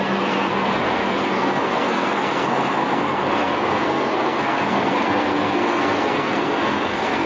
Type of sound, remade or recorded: remade